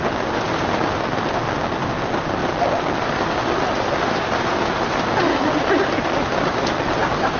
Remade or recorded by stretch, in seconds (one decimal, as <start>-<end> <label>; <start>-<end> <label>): 0.0-7.4 recorded